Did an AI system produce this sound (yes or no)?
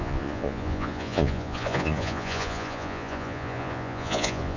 yes